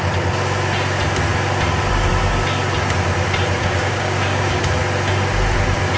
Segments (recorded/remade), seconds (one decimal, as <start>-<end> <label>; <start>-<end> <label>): 0.0-3.6 recorded; 3.6-4.6 remade; 4.6-6.0 recorded